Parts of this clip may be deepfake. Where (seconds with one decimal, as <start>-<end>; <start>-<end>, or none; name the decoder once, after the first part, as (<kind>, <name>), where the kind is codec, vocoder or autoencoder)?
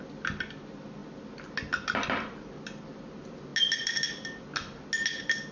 none